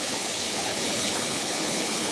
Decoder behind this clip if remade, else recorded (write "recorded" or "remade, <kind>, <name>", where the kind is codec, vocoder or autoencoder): remade, codec, HILCodec